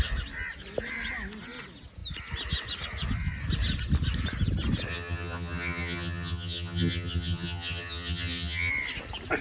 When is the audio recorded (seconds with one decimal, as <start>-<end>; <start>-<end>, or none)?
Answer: 0.0-4.9; 8.7-9.4